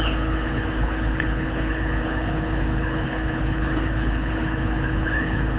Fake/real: fake